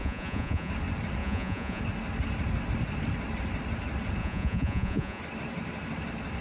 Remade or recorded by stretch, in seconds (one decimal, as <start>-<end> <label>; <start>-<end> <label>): 0.0-0.7 remade; 0.7-1.2 recorded; 1.2-1.8 remade; 1.8-4.2 recorded; 4.2-5.2 remade; 5.2-6.4 recorded